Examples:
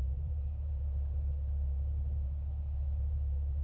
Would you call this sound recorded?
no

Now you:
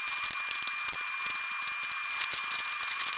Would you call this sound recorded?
yes